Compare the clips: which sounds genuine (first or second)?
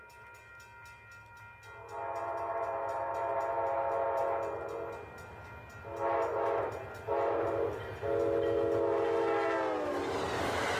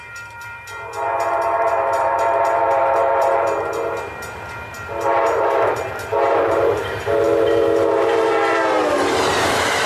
first